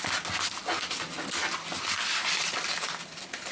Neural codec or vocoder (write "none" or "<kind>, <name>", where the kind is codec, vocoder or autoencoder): none